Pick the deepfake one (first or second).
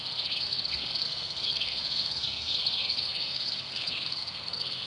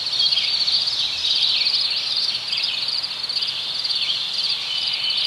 first